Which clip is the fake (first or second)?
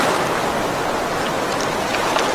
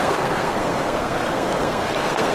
second